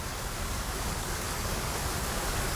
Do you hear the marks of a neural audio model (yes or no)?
yes